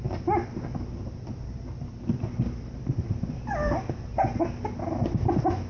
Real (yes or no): yes